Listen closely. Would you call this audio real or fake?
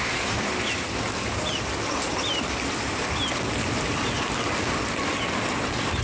real